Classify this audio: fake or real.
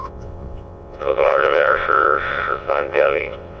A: fake